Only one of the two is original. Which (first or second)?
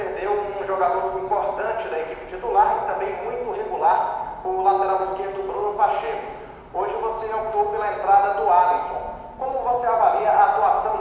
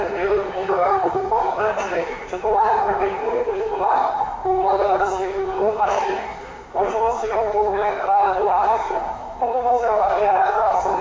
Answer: first